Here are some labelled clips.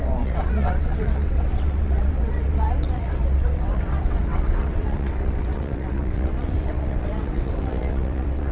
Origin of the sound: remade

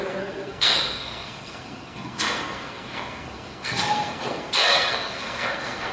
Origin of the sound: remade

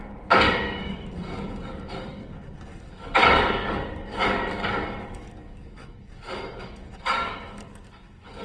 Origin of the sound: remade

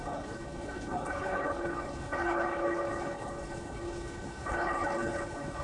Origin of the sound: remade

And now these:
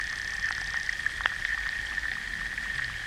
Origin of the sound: recorded